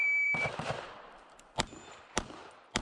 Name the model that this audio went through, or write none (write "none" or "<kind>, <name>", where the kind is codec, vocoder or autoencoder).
vocoder, BigVGAN v2